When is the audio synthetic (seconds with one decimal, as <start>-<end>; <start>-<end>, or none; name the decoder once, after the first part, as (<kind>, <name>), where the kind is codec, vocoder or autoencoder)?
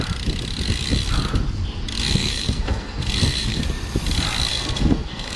2.2-3.6 (codec, SNAC); 4.5-5.4